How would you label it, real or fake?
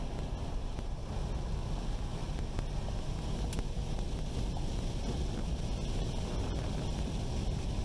real